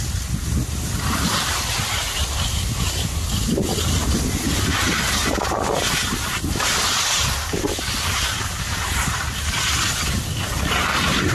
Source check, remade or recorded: recorded